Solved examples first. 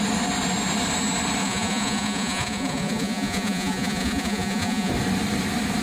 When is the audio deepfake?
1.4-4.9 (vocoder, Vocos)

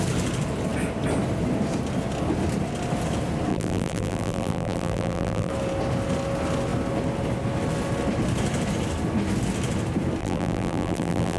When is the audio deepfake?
3.5-5.5 (vocoder, BigVGAN v2); 10.2-11.4